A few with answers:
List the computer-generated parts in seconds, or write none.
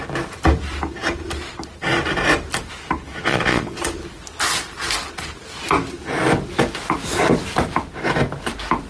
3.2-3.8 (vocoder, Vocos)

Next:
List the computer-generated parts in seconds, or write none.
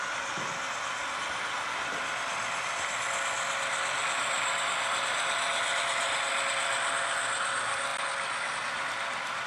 none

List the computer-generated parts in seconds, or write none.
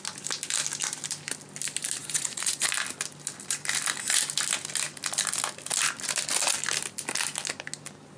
2.0-2.7 (vocoder, Vocos)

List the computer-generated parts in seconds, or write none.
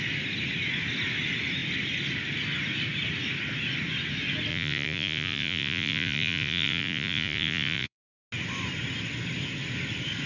4.5-8.0 (vocoder, Vocos)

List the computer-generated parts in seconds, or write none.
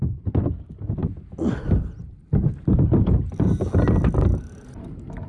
none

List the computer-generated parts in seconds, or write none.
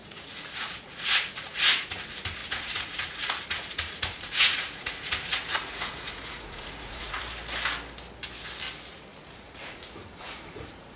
0.0-2.0 (vocoder, Vocos); 2.4-7.2; 9.1-11.0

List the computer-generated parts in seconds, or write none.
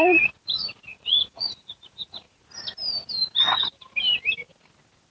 0.9-2.4 (vocoder, Vocos)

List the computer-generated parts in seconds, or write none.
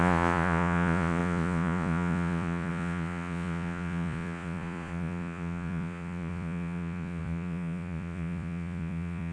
0.0-9.3 (vocoder, Vocos)